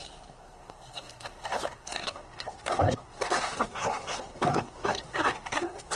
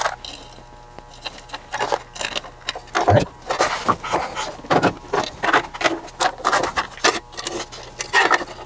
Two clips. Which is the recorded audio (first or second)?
second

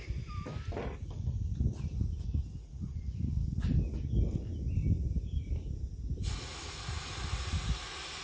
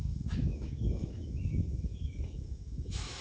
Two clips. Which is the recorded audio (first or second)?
first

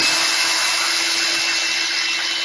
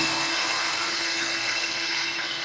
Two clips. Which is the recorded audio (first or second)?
first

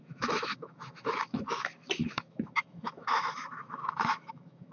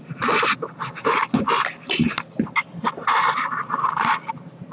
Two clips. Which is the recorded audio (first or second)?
second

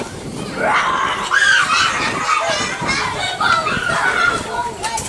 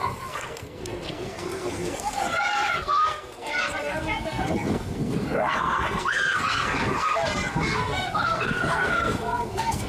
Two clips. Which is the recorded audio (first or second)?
first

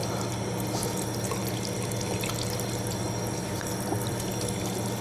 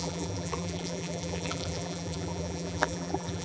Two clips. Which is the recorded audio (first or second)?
first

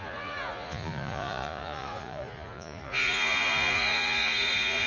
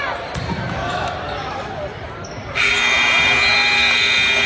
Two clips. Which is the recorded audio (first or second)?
second